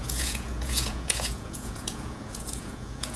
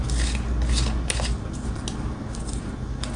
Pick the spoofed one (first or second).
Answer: first